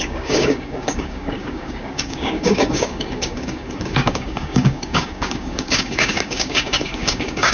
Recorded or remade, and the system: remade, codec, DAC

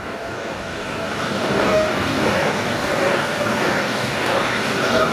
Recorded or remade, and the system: remade, codec, DAC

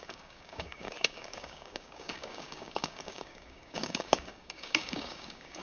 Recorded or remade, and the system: remade, codec, DAC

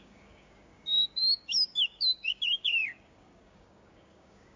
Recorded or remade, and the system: remade, codec, DAC